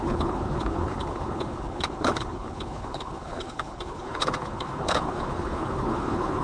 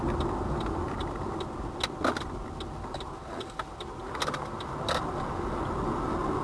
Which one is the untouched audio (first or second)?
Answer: second